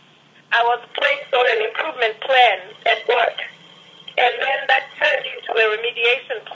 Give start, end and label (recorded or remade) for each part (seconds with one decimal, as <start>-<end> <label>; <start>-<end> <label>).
0.0-0.9 recorded; 0.9-1.9 remade; 1.9-2.7 recorded; 2.7-5.6 remade; 5.6-6.5 recorded